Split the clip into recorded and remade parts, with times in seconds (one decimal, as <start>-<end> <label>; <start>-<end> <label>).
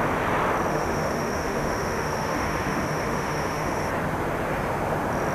0.0-0.7 recorded; 0.7-3.9 remade; 3.9-5.3 recorded